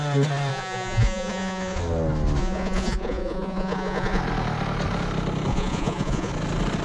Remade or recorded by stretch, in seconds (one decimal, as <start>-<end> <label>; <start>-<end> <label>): 0.0-0.5 recorded; 0.5-1.8 remade; 1.8-2.4 recorded; 2.4-4.2 remade; 4.2-5.5 recorded; 5.5-6.3 remade; 6.3-6.8 recorded